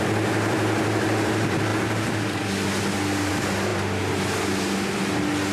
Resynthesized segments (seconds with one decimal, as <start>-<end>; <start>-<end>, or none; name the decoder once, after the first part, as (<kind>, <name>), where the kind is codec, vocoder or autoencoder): none